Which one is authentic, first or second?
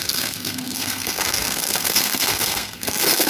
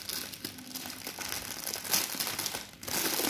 second